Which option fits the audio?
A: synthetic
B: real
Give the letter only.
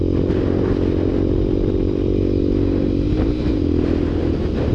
B